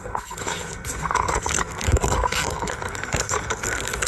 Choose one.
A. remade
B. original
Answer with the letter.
A